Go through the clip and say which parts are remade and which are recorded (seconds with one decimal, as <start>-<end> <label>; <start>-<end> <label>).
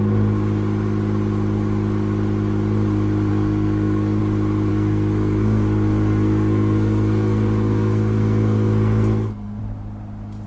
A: 0.0-3.3 recorded; 3.3-4.2 remade; 4.2-4.7 recorded; 4.7-9.6 remade; 9.6-10.5 recorded